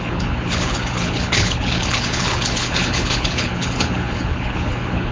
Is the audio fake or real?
fake